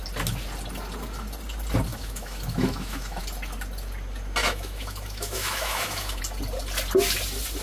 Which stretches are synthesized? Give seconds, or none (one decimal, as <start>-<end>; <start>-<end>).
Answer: 1.9-3.2; 4.4-6.2